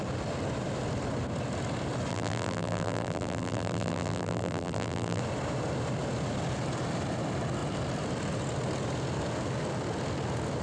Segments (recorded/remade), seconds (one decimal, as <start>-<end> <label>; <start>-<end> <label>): 0.0-2.1 recorded; 2.1-5.2 remade; 5.2-10.6 recorded